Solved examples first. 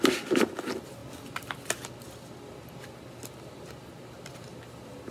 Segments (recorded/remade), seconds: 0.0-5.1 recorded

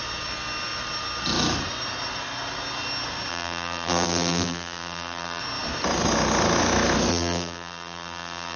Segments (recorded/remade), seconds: 0.0-3.3 recorded; 3.3-5.4 remade; 5.4-7.1 recorded; 7.1-8.6 remade

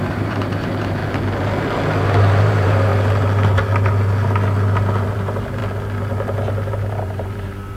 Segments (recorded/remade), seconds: 0.0-1.0 remade; 1.0-2.4 recorded; 2.4-2.9 remade; 2.9-5.1 recorded; 5.1-5.6 remade; 5.6-6.7 recorded; 6.7-7.8 remade

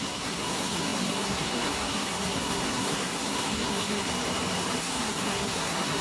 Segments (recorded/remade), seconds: 0.0-4.1 remade; 4.1-4.8 recorded; 4.8-6.0 remade

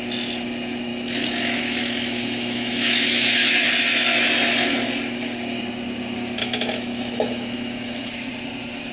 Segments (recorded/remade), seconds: 0.0-0.9 recorded; 0.9-3.7 remade; 3.7-6.4 recorded; 6.4-8.3 remade; 8.3-8.9 recorded

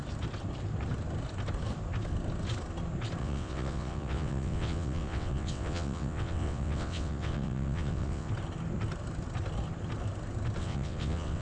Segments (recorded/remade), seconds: 0.0-3.2 recorded; 3.2-8.3 remade; 8.3-10.6 recorded; 10.6-11.4 remade

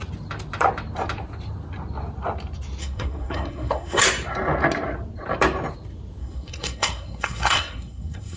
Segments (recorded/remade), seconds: 0.0-2.8 recorded; 2.8-4.0 remade; 4.0-6.2 recorded; 6.2-8.4 remade